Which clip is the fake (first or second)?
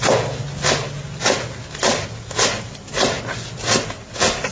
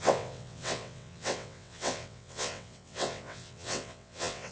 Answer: second